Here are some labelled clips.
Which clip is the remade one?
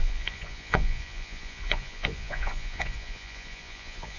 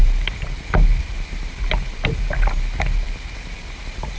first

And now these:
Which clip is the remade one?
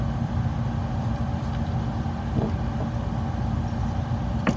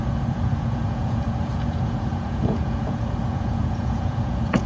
second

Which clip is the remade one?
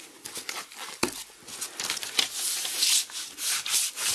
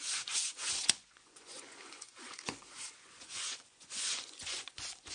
second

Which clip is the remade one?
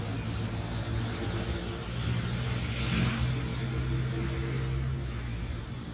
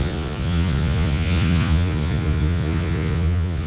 second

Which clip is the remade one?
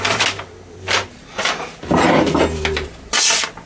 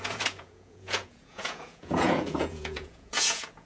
second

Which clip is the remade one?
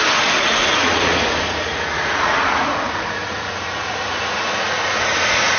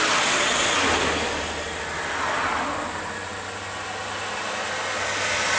first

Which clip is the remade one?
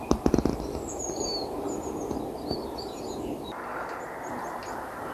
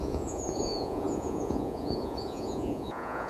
second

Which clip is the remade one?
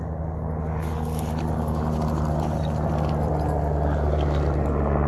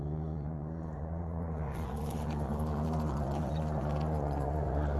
second